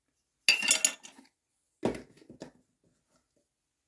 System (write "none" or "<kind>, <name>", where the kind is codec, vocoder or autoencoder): none